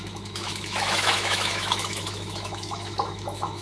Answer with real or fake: fake